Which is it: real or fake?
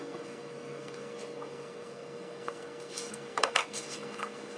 fake